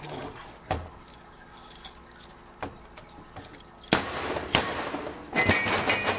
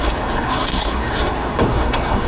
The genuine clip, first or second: first